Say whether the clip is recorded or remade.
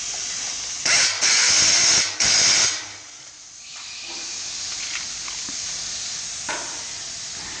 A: recorded